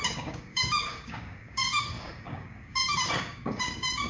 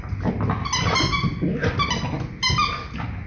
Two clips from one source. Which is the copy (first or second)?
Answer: first